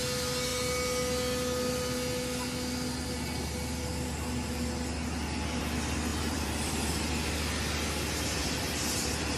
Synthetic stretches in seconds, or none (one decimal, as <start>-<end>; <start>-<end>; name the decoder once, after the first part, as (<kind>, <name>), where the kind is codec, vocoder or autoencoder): 6.1-6.7 (vocoder, BigVGAN v2); 8.4-9.4